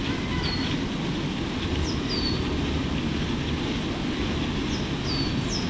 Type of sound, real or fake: real